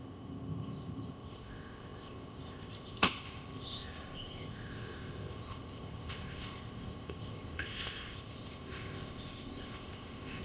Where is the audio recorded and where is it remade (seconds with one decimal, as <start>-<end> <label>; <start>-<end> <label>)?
0.0-10.4 remade